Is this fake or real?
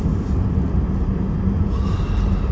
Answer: real